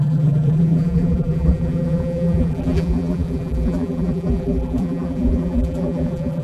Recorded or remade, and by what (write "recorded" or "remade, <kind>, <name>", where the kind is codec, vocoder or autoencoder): remade, vocoder, BigVGAN v2